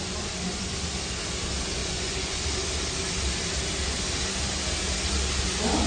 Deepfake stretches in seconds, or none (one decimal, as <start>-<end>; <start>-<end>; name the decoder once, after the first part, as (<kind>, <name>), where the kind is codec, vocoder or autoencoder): 1.8-2.4 (vocoder, Vocos)